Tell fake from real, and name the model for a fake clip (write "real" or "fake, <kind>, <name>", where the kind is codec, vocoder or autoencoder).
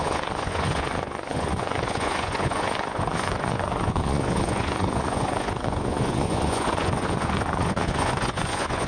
fake, vocoder, Vocos